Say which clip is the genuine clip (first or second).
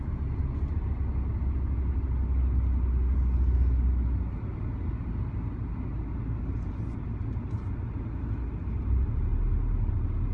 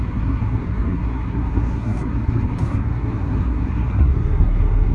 first